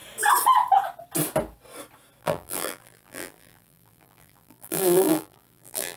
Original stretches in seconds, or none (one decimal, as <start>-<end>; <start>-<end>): 0.0-2.2